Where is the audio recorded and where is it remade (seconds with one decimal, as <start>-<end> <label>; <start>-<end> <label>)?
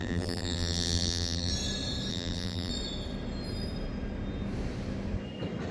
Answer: 0.0-1.5 remade; 1.5-2.1 recorded; 2.1-2.7 remade; 2.7-5.7 recorded